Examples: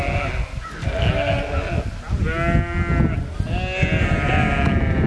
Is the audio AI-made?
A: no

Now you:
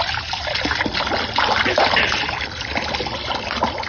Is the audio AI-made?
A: no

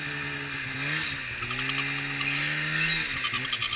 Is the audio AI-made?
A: no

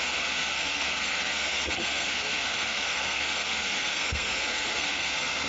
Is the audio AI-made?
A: yes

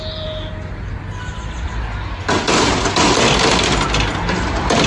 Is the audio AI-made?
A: no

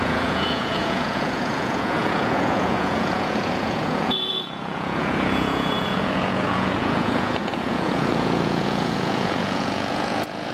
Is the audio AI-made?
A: yes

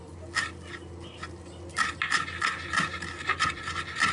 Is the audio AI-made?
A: no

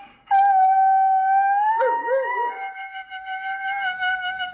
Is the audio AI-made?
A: yes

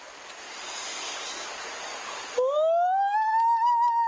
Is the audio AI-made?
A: no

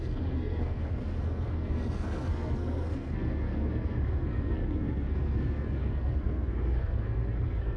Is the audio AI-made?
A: yes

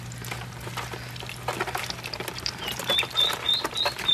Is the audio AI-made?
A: no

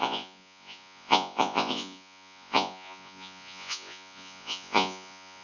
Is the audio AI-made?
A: yes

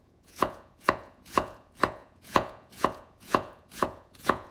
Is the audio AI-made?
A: yes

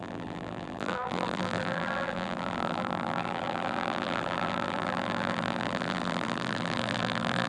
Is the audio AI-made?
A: yes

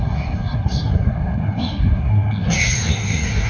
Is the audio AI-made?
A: yes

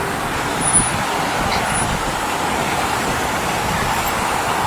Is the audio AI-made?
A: no